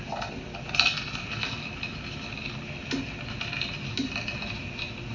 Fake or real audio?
real